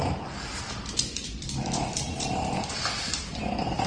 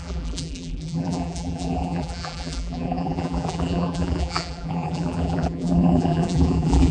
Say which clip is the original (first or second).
first